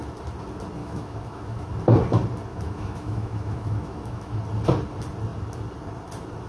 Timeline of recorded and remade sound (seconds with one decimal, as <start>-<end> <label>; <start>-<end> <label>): 0.0-0.8 recorded; 0.8-1.7 remade; 1.7-2.5 recorded; 2.5-4.4 remade; 4.4-6.5 recorded